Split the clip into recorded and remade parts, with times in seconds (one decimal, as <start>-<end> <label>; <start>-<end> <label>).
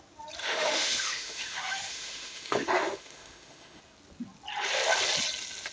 0.0-0.4 recorded; 0.4-3.8 remade; 3.8-5.7 recorded